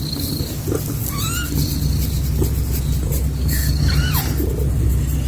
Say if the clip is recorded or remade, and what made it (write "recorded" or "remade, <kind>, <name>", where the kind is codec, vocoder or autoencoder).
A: recorded